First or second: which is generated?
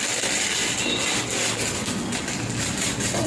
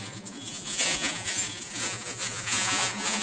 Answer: second